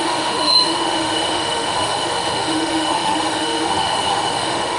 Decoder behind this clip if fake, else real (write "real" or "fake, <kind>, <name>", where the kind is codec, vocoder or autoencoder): fake, autoencoder, DAC-VAE